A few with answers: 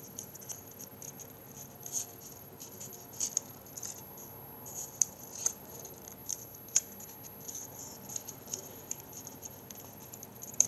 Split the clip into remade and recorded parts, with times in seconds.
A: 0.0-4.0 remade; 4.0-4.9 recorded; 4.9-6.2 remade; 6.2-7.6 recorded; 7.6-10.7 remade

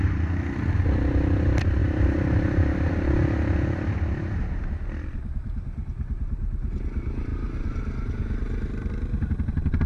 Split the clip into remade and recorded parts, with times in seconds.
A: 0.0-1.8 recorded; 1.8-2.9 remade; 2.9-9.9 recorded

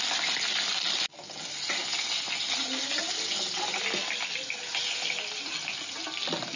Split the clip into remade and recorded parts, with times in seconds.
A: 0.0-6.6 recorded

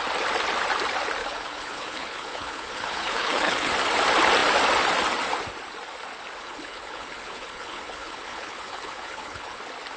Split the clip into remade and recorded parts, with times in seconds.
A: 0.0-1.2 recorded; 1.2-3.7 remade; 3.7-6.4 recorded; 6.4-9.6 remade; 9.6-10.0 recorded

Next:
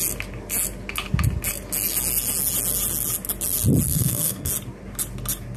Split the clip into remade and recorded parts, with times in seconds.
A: 0.0-3.9 recorded; 3.9-4.5 remade; 4.5-5.6 recorded